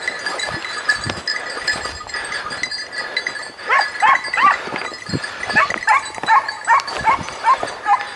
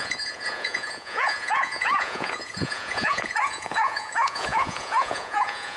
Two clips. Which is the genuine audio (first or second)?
first